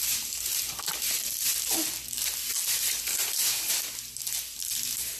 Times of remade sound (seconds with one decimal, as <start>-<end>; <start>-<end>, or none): 0.0-0.9